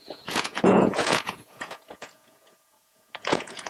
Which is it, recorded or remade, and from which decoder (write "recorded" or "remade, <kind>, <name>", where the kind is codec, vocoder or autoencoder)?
remade, vocoder, Vocos